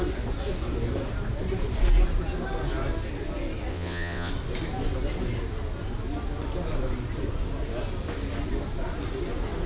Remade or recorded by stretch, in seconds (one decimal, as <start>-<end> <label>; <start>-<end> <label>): 0.0-3.7 recorded; 3.7-4.3 remade; 4.3-9.7 recorded